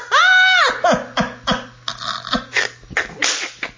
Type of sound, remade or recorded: recorded